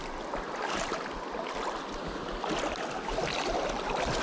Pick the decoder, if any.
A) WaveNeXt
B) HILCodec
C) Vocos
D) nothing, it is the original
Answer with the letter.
D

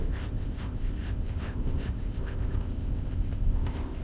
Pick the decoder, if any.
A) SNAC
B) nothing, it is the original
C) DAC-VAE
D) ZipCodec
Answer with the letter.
D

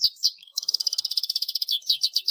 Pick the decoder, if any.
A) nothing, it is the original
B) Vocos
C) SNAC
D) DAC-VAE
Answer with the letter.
C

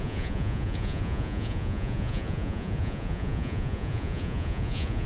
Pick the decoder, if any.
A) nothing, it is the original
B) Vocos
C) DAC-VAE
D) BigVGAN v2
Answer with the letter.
B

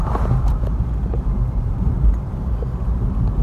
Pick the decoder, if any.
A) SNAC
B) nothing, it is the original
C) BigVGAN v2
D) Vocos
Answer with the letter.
C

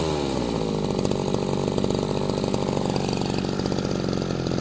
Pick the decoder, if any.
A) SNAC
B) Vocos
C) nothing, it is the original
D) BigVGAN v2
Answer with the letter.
C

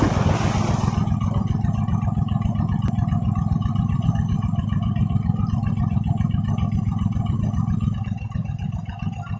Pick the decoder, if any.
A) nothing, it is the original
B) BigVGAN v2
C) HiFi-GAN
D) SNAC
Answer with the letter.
A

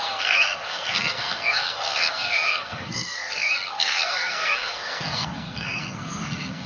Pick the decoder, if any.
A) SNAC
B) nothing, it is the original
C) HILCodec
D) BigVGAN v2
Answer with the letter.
A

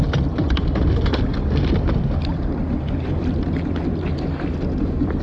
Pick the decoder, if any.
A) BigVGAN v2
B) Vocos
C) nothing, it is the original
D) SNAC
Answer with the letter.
C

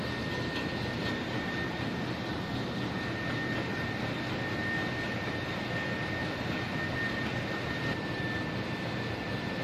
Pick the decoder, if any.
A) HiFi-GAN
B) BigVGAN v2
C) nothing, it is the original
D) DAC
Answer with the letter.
C